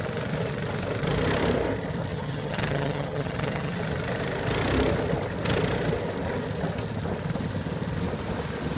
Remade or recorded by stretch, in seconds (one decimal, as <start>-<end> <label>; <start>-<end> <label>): 0.0-2.1 recorded; 2.1-3.8 remade; 3.8-8.8 recorded